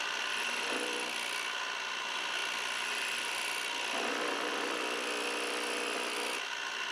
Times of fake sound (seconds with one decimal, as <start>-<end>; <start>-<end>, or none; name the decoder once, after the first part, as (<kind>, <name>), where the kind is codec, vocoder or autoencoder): none